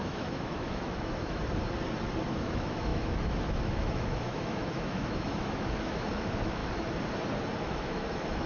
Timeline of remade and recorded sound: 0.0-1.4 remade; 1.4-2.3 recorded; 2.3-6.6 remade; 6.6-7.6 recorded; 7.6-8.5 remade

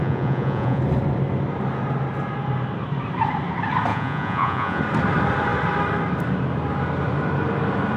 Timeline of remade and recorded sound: 0.0-0.8 remade; 0.8-3.9 recorded; 3.9-4.8 remade; 4.8-8.0 recorded

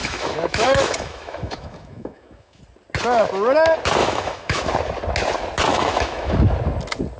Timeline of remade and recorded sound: 0.0-2.6 remade; 2.6-4.0 recorded; 4.0-4.7 remade; 4.7-5.7 recorded; 5.7-6.3 remade; 6.3-7.2 recorded

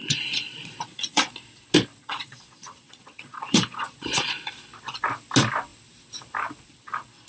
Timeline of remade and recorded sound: 0.0-1.3 remade; 1.3-2.0 recorded; 2.0-4.5 remade; 4.5-7.3 recorded